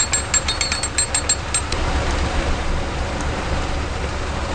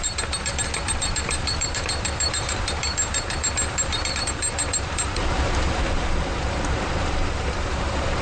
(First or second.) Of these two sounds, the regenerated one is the second